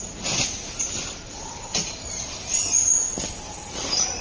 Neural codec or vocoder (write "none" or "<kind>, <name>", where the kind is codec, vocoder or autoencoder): none